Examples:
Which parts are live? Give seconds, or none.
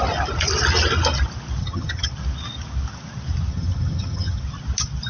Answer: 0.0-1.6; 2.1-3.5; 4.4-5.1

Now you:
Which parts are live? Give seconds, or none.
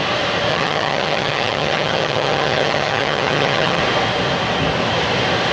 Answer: 0.0-0.5; 3.8-5.5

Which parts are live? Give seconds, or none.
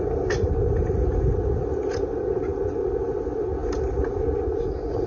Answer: 0.0-5.1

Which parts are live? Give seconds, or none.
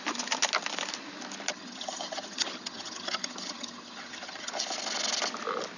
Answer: 0.0-1.5; 4.5-5.8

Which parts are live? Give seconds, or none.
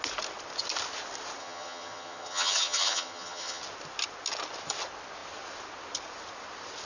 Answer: 0.0-1.4; 3.6-6.9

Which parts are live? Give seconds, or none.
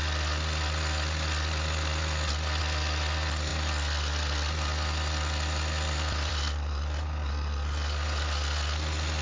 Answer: 0.0-9.2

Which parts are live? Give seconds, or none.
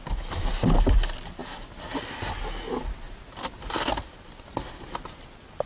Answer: 0.0-5.7